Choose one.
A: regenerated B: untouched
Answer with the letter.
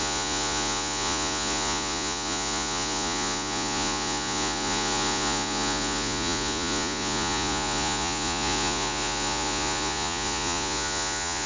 A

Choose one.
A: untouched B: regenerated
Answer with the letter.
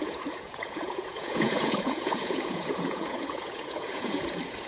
B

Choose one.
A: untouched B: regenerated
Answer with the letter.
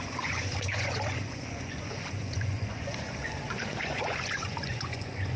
B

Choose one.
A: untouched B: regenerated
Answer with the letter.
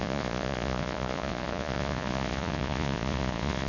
B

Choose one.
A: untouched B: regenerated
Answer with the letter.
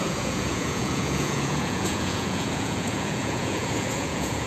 B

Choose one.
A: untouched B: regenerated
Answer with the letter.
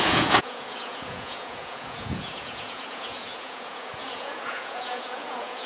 B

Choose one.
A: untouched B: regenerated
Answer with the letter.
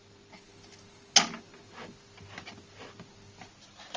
A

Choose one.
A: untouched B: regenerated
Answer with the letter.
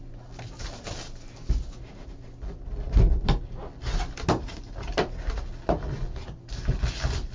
A